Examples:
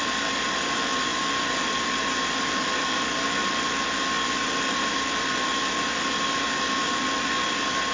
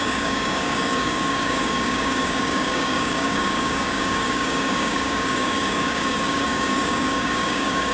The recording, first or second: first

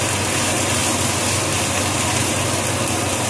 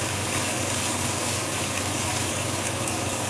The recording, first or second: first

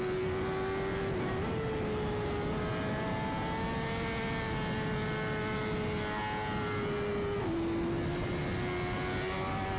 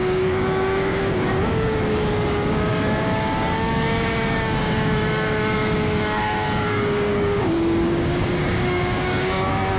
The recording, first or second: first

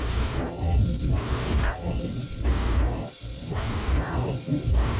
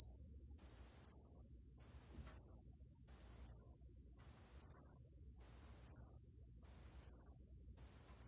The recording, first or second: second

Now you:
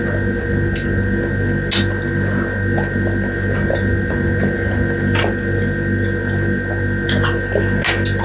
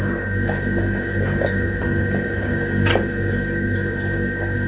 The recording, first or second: first